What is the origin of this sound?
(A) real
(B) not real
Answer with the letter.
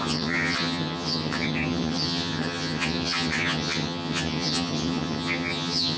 B